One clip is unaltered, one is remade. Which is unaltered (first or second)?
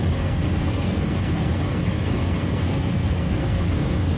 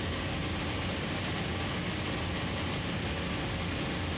second